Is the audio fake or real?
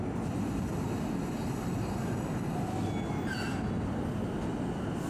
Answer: real